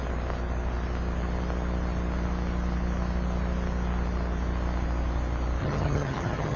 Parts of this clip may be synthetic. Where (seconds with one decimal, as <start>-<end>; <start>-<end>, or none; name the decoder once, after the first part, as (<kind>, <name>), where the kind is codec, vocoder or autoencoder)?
5.6-6.6 (vocoder, HiFi-GAN)